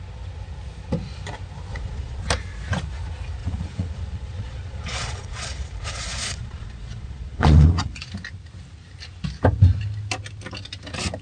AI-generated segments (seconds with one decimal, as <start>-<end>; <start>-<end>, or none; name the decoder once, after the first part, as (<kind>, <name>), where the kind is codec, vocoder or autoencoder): 1.7-2.2 (vocoder, Vocos); 3.4-8.1

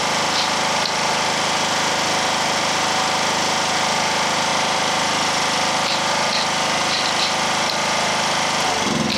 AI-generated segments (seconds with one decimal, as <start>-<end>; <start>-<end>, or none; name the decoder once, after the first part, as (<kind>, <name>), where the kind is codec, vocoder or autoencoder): 4.5-6.3 (vocoder, BigVGAN v2)

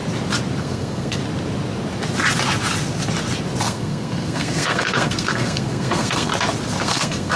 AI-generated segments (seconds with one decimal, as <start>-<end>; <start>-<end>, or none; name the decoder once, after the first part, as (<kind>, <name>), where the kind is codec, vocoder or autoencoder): 0.6-1.2 (codec, SNAC); 3.6-6.3; 6.8-7.4

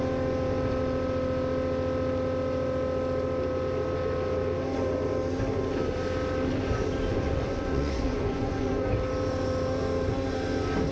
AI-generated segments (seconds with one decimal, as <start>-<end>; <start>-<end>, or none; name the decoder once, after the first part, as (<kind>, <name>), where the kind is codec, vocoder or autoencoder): 7.1-8.9 (vocoder, Vocos)

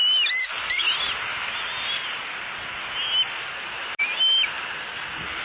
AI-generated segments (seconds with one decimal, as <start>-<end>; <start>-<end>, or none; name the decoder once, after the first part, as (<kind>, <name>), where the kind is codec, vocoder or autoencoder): none

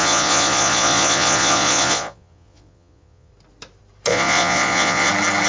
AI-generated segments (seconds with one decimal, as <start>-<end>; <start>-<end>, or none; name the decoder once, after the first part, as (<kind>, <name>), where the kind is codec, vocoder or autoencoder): 0.0-3.3 (vocoder, Vocos); 4.1-5.1

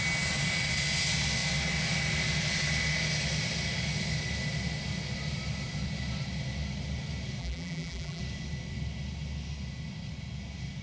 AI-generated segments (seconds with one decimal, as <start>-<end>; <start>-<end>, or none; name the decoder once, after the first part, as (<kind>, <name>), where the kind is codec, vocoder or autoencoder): 7.4-8.2 (vocoder, BigVGAN v2)